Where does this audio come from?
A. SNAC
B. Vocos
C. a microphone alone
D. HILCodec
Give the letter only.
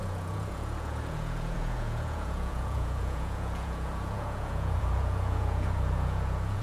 B